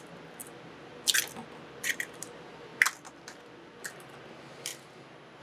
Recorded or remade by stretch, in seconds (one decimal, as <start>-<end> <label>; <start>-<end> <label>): 0.0-5.4 recorded